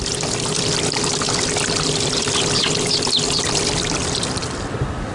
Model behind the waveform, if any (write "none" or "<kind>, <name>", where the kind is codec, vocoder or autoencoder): vocoder, BigVGAN v2